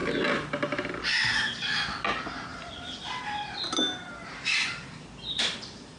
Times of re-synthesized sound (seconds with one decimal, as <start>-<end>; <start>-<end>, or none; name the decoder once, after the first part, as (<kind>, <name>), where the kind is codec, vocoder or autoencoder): none